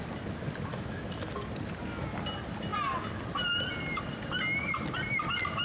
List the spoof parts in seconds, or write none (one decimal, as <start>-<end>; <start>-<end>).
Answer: 0.7-1.3